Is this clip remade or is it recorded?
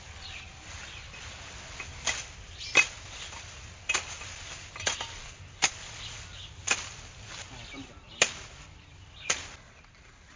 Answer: recorded